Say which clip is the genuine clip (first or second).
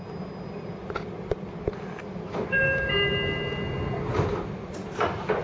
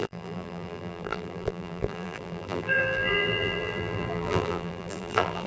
first